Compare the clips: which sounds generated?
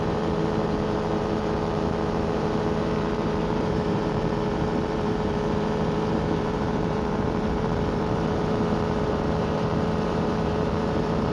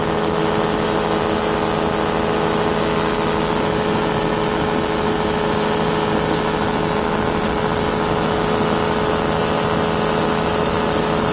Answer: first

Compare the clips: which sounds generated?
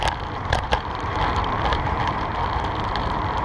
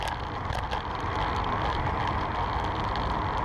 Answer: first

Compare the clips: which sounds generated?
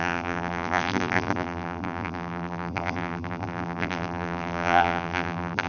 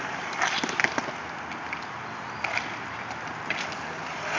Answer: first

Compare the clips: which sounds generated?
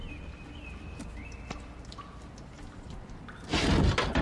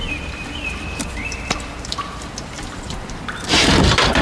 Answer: second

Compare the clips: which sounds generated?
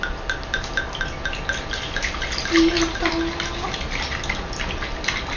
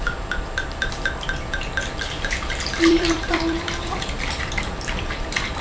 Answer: second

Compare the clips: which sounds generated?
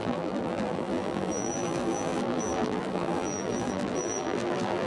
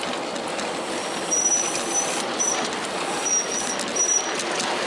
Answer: first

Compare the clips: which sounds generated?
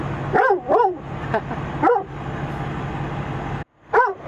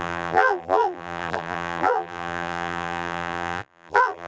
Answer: second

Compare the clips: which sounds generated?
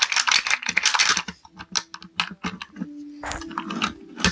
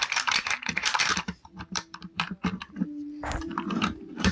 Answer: second